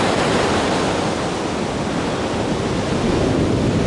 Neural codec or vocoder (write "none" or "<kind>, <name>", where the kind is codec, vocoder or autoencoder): none